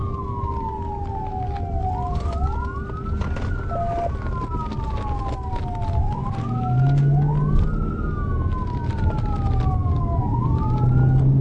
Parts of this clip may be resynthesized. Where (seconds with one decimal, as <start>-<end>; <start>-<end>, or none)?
none